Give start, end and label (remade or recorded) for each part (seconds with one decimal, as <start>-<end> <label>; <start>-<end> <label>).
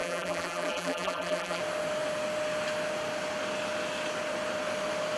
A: 0.0-1.6 remade; 1.6-5.2 recorded